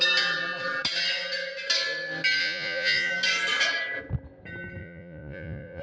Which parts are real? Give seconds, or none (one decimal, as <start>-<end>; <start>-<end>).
0.0-2.4; 3.1-4.8